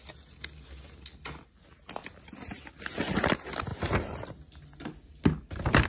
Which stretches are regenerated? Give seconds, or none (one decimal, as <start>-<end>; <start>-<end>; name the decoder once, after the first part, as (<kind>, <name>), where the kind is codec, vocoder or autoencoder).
none